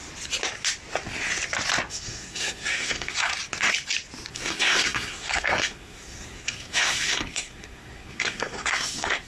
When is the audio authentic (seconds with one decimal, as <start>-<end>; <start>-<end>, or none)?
0.0-1.9; 3.3-4.3

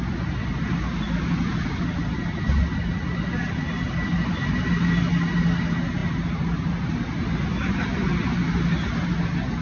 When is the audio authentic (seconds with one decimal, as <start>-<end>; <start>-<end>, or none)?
0.0-9.6

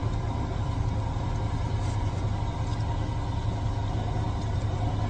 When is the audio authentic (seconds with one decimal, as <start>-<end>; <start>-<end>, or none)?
2.7-4.4

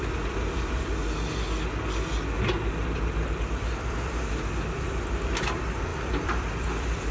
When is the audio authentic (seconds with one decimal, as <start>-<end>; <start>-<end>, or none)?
1.0-2.7

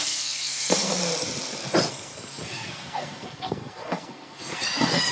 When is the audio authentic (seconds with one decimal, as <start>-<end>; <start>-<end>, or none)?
1.0-1.9

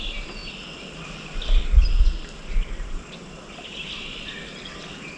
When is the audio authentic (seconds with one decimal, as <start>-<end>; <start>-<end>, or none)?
0.0-1.8; 4.4-5.2

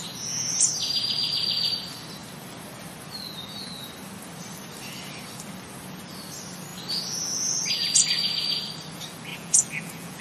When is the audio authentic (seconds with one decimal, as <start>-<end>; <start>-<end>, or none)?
0.0-9.3

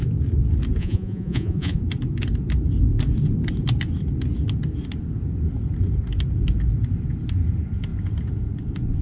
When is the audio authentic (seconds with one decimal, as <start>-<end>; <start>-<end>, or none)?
0.0-0.8; 1.8-9.0